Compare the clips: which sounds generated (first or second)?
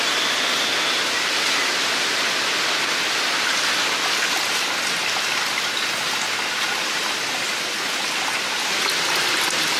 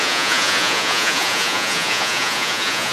second